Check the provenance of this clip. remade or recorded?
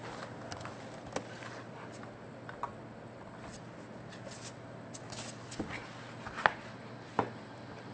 recorded